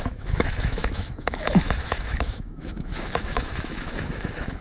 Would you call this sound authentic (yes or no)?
no